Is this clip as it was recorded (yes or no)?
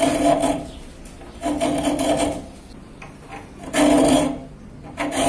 yes